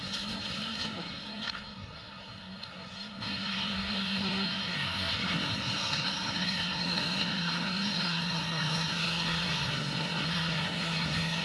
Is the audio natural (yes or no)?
no